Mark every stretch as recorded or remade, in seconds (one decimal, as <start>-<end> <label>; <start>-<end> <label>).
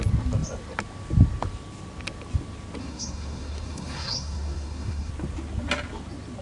0.0-2.8 recorded; 2.8-5.1 remade; 5.1-6.4 recorded